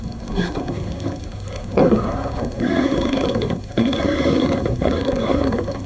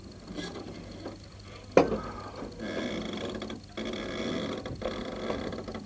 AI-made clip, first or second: first